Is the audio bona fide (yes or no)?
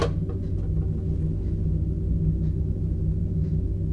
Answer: yes